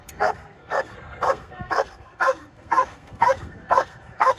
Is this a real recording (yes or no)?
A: no